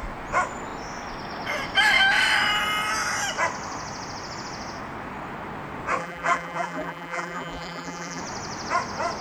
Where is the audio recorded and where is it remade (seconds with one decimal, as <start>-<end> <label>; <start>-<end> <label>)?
0.0-6.0 recorded; 6.0-8.2 remade; 8.2-9.2 recorded